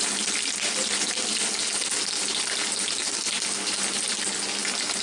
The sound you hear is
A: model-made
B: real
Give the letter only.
B